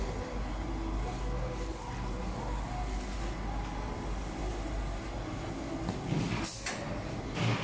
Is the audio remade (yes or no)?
no